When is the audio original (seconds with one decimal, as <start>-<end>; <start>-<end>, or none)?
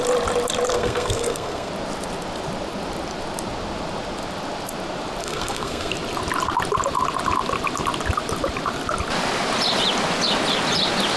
0.0-0.7; 1.7-5.2; 5.9-11.2